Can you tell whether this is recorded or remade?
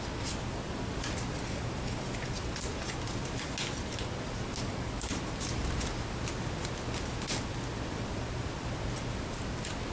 recorded